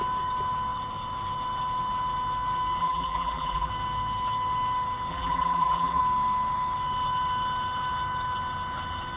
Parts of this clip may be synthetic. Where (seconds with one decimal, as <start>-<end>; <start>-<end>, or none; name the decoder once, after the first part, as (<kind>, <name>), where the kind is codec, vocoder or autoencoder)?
2.8-3.7 (vocoder, BigVGAN v2); 5.1-6.0